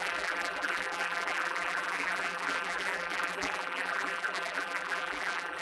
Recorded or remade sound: remade